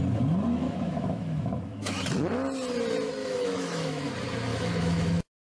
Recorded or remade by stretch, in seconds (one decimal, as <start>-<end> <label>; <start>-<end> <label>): 0.0-0.5 recorded; 0.5-2.0 remade; 2.0-3.2 recorded; 3.2-4.1 remade; 4.1-4.5 recorded; 4.5-5.5 remade